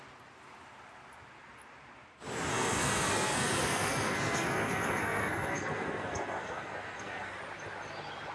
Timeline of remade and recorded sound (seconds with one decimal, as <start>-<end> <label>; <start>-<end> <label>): 0.0-2.5 recorded; 2.5-7.4 remade; 7.4-8.3 recorded